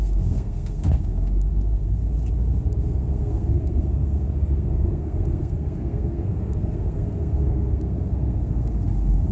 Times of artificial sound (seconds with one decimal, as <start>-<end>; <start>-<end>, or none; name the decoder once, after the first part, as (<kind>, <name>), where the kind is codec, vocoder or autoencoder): 0.0-2.0 (codec, SNAC); 2.8-9.3